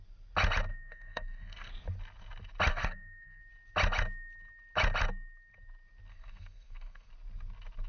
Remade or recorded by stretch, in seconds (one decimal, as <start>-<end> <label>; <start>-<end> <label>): 0.0-0.7 recorded; 0.7-1.7 remade; 1.7-2.7 recorded; 2.7-3.4 remade; 3.4-6.1 recorded; 6.1-7.1 remade; 7.1-7.9 recorded